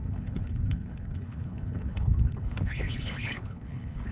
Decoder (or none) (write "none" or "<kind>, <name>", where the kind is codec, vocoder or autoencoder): codec, HILCodec